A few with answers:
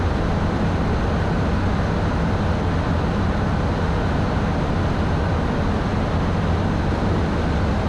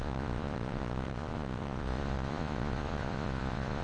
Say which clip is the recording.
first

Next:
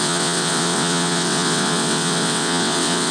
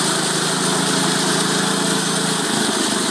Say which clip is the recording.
second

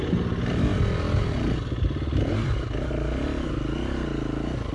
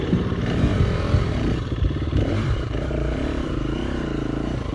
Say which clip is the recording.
first